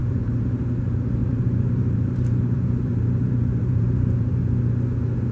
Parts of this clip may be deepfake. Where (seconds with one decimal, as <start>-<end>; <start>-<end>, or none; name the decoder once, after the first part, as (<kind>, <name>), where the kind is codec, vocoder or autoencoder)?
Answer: 0.0-0.6 (vocoder, BigVGAN v2); 1.2-4.4